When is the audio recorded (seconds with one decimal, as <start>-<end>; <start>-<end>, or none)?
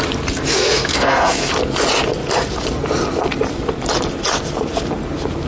0.0-0.5; 1.5-5.5